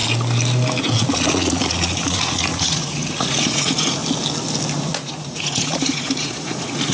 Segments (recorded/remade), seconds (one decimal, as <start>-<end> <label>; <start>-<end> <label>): 0.0-0.8 recorded; 0.8-4.0 remade; 4.0-4.9 recorded; 4.9-6.9 remade